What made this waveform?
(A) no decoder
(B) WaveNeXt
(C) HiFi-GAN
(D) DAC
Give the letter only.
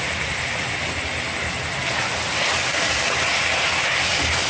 A